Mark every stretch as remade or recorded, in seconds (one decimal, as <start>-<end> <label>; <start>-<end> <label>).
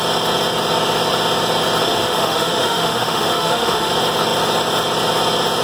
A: 0.0-1.8 recorded; 1.8-3.9 remade; 3.9-5.6 recorded